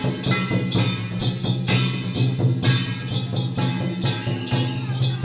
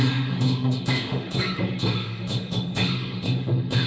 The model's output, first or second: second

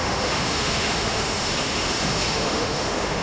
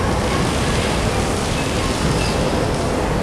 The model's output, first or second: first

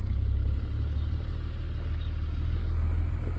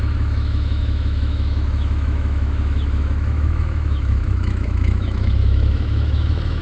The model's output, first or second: second